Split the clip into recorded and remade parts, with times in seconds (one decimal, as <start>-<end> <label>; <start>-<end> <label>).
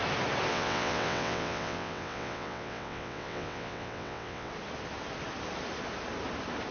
0.0-0.5 recorded; 0.5-4.5 remade; 4.5-6.7 recorded